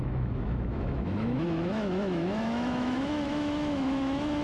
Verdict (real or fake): fake